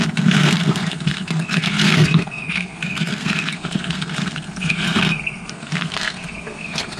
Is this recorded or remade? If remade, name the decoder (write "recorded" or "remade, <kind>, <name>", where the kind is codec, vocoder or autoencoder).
remade, codec, SNAC